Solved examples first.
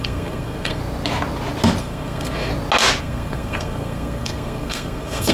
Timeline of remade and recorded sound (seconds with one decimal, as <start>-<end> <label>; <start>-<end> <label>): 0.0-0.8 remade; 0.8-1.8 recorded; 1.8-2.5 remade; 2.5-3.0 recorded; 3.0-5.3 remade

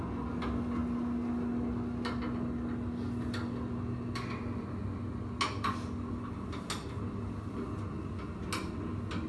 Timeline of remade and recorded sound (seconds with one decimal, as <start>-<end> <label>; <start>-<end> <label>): 0.0-9.3 recorded

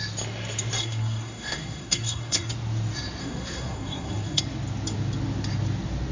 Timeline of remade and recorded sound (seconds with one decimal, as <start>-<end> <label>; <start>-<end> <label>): 0.0-0.8 recorded; 0.8-2.5 remade; 2.5-3.2 recorded; 3.2-4.4 remade; 4.4-6.1 recorded